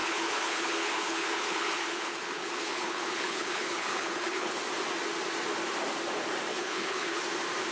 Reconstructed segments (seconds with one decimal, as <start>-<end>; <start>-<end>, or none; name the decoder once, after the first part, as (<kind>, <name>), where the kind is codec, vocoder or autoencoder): 0.0-4.6 (codec, HILCodec); 6.5-7.2